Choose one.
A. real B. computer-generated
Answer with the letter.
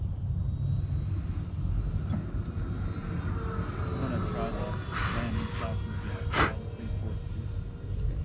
A